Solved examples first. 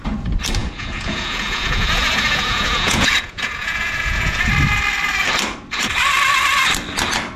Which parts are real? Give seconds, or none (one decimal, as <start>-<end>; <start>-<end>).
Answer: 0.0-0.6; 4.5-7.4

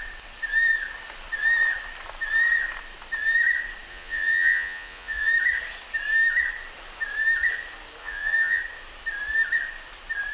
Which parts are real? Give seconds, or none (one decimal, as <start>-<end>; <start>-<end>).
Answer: 0.0-3.9; 5.3-8.0; 8.6-10.3

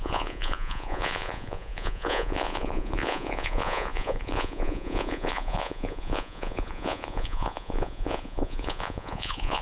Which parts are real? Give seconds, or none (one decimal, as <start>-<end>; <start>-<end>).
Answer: none

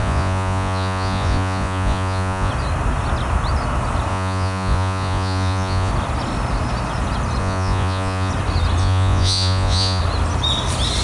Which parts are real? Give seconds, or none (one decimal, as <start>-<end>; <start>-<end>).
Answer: 2.5-4.1; 5.9-7.4; 8.3-8.8; 10.0-11.0

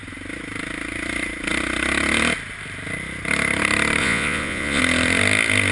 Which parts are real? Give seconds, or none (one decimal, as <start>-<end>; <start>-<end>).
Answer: 0.0-4.0; 4.8-5.7

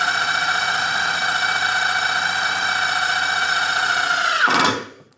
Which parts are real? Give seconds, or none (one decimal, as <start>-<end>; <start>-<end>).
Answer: 1.2-3.4

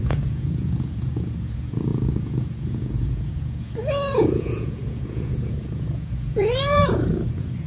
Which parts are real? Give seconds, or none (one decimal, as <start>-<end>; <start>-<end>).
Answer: none

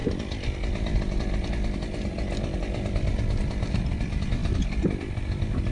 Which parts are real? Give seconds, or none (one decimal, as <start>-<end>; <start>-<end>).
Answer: 0.0-5.7